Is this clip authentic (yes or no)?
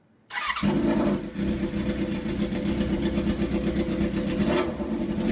yes